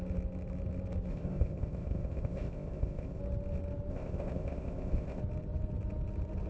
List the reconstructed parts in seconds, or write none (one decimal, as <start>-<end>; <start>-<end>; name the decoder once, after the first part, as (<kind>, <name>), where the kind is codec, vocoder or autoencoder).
1.1-3.2 (codec, ZipCodec); 3.9-5.2